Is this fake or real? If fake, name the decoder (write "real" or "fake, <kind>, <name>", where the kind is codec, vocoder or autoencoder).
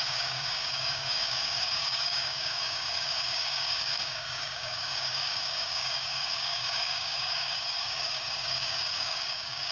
fake, codec, DAC